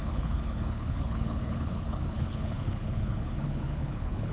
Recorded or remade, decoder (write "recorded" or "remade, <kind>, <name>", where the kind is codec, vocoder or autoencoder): remade, codec, HILCodec